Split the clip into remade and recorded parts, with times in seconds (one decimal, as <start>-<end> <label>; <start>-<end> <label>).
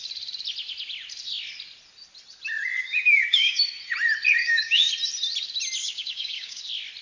0.0-2.8 recorded; 2.8-3.7 remade; 3.7-4.4 recorded; 4.4-4.9 remade; 4.9-5.8 recorded; 5.8-6.6 remade; 6.6-7.0 recorded